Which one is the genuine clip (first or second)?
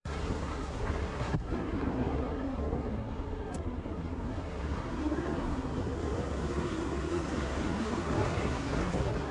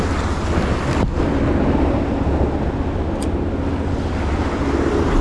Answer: second